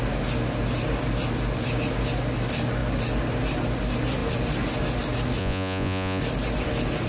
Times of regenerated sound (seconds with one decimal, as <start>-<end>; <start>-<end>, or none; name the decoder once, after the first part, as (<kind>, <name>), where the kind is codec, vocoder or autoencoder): 5.4-6.2 (vocoder, Vocos)